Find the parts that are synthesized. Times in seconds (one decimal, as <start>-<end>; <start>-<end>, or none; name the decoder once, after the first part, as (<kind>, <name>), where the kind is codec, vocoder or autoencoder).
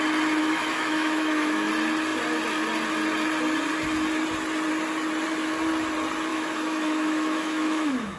0.4-1.7 (autoencoder, DAC-VAE); 6.3-8.2